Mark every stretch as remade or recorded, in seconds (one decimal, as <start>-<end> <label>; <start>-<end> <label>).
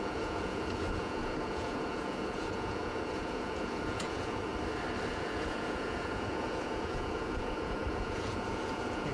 0.0-4.5 remade; 4.5-5.1 recorded; 5.1-9.1 remade